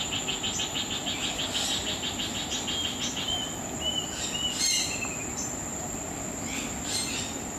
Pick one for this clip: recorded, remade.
recorded